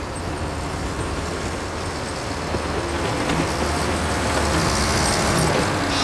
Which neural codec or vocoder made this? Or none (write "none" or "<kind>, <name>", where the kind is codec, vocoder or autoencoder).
none